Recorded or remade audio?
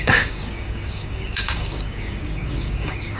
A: remade